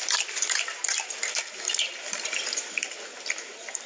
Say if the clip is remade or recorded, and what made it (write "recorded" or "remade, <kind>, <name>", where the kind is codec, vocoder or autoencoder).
remade, vocoder, BigVGAN v2